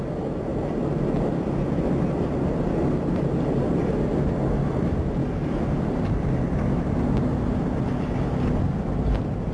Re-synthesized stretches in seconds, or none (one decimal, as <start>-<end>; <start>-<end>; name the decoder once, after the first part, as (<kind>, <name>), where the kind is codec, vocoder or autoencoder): none